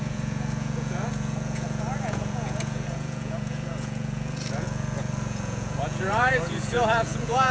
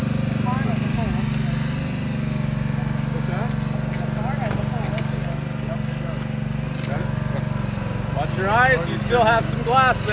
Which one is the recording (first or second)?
second